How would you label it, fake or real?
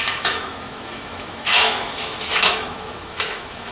fake